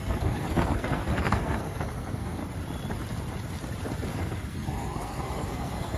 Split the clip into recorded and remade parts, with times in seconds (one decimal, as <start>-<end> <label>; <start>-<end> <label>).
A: 0.0-2.4 remade; 2.4-4.1 recorded; 4.1-6.0 remade

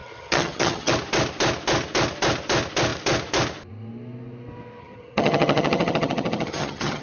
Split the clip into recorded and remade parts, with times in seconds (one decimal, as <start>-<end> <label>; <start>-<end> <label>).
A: 0.0-0.9 remade; 0.9-4.8 recorded; 4.8-7.0 remade

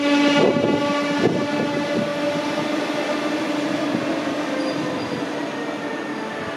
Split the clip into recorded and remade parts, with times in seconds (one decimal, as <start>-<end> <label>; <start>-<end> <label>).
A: 0.0-6.6 recorded

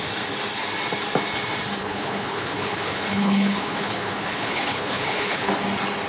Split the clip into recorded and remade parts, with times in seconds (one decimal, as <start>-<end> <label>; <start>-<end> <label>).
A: 0.0-1.8 recorded; 1.8-5.5 remade; 5.5-6.1 recorded

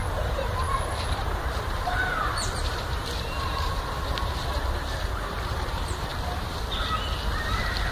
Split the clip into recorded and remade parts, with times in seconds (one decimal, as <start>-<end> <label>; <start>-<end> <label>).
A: 0.0-6.1 remade; 6.1-7.9 recorded